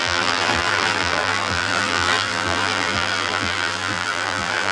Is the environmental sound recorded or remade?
remade